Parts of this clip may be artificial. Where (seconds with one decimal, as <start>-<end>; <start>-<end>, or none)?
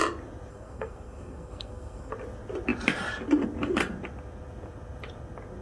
0.5-2.1